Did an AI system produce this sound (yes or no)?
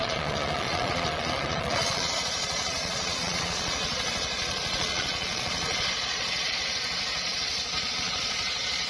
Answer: yes